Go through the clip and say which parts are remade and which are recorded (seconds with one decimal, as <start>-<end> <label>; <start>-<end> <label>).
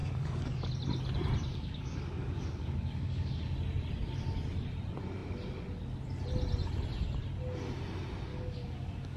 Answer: 0.0-0.7 remade; 0.7-1.5 recorded; 1.5-3.3 remade; 3.3-8.3 recorded; 8.3-9.2 remade